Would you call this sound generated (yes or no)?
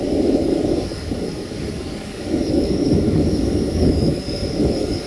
yes